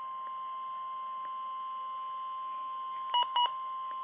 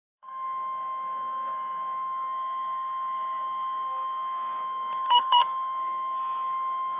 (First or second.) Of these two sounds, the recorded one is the first